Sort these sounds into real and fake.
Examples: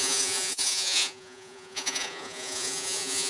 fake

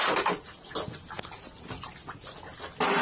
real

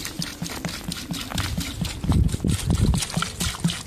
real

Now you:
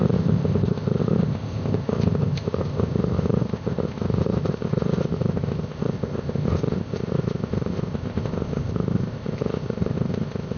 fake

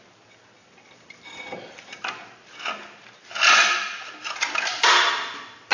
real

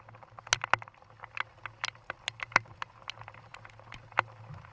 real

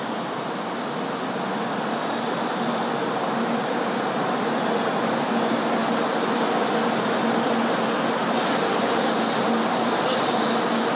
real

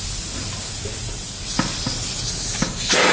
real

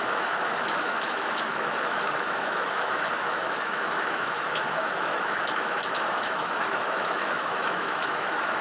fake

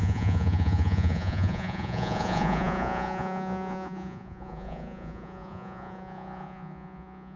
fake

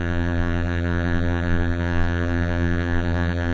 fake